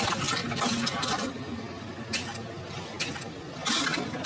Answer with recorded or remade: remade